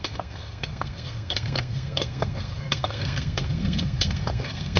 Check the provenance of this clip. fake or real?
fake